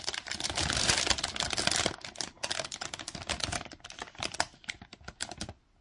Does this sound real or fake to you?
real